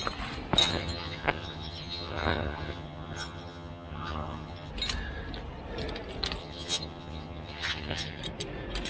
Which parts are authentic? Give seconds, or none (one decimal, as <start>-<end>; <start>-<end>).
0.0-0.6; 4.7-6.4; 8.2-8.9